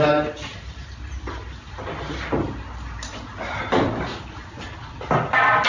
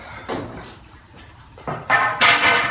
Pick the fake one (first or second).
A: second